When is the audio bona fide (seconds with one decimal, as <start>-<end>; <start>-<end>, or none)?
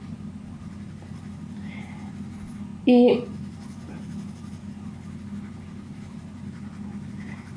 0.0-7.6